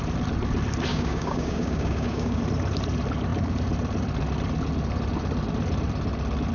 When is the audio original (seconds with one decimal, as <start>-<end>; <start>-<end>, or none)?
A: 0.0-0.9; 2.4-6.5